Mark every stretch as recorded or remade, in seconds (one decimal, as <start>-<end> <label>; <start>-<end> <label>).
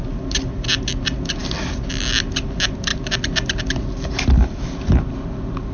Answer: 0.0-5.7 recorded